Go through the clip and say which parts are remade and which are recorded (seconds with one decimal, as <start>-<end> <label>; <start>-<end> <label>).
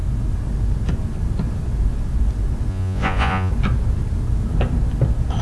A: 0.0-2.7 recorded; 2.7-3.5 remade; 3.5-5.4 recorded